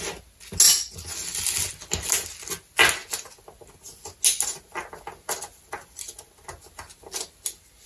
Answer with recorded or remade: recorded